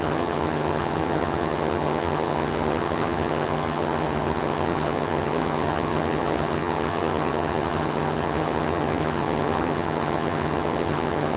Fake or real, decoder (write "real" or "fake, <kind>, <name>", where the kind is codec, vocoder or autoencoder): fake, vocoder, HiFi-GAN